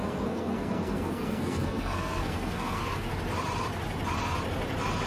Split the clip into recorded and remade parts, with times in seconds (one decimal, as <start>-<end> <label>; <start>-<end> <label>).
0.0-3.1 remade; 3.1-5.1 recorded

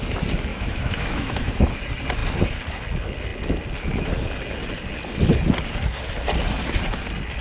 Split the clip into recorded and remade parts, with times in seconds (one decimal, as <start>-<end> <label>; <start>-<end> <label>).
0.0-0.5 recorded; 0.5-1.5 remade; 1.5-7.4 recorded

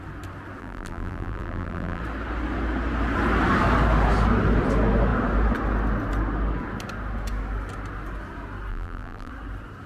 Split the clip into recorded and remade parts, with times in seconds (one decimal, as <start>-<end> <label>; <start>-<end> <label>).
0.0-0.6 recorded; 0.6-2.0 remade; 2.0-8.7 recorded; 8.7-9.3 remade; 9.3-9.9 recorded

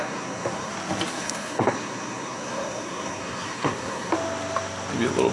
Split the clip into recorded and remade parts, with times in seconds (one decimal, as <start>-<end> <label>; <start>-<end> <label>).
0.0-0.7 remade; 0.7-1.1 recorded; 1.1-4.1 remade; 4.1-5.3 recorded